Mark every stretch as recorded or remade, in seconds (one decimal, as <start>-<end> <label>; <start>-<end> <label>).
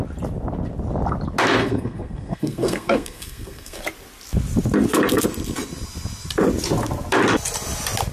0.0-1.6 recorded; 1.6-3.8 remade; 3.8-8.1 recorded